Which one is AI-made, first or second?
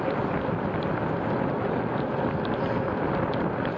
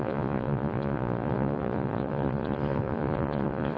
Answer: second